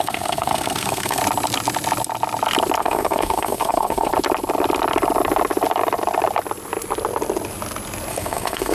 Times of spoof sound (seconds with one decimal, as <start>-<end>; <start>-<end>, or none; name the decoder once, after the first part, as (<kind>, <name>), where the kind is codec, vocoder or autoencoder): 0.0-1.2 (codec, SNAC); 2.8-4.1; 8.1-8.7